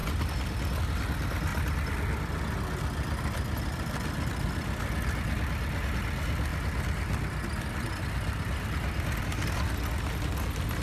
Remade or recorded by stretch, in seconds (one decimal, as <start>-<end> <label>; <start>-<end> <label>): 0.0-1.5 recorded; 1.5-2.4 remade; 2.4-10.8 recorded